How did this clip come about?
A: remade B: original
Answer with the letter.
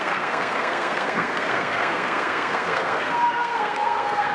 A